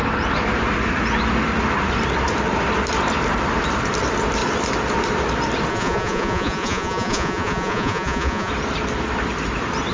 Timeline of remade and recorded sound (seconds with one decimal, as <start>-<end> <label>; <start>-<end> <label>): 0.0-5.7 recorded; 5.7-8.5 remade; 8.5-9.9 recorded

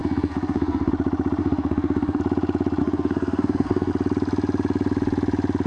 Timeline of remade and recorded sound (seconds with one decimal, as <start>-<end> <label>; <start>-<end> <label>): 0.0-0.9 remade; 0.9-1.4 recorded; 1.4-2.2 remade; 2.2-2.8 recorded; 2.8-3.9 remade; 3.9-5.7 recorded

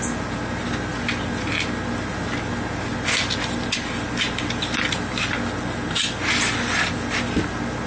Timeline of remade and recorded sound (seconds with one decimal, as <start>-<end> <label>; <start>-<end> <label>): 0.0-2.9 recorded; 2.9-6.9 remade; 6.9-7.9 recorded

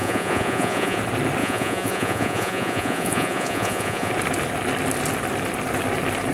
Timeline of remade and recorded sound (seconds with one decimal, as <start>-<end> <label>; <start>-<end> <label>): 0.0-1.0 remade; 1.0-1.4 recorded; 1.4-4.1 remade; 4.1-6.3 recorded

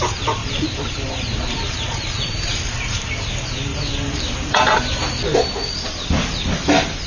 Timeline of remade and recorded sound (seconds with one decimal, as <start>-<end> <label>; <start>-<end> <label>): 0.0-0.4 recorded; 0.4-3.1 remade; 3.1-3.7 recorded; 3.7-5.0 remade; 5.0-7.1 recorded